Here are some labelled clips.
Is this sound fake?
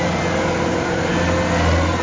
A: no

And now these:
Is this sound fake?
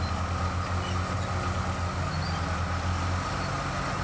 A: no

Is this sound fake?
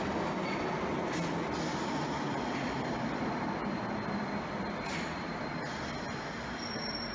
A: no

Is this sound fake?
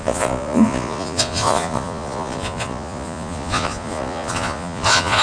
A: yes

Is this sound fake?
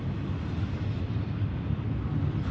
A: no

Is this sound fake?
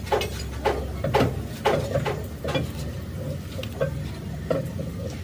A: no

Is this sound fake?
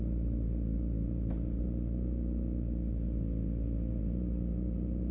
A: no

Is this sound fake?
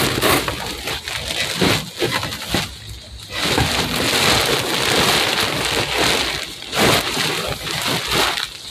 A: no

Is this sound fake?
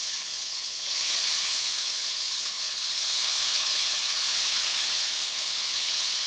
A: yes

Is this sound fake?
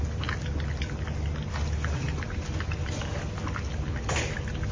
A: no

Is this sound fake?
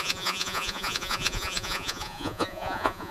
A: yes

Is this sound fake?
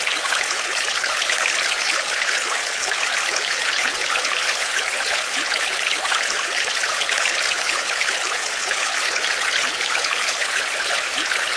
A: yes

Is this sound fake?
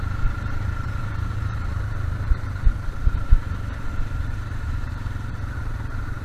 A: yes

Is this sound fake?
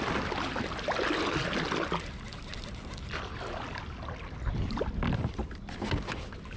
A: no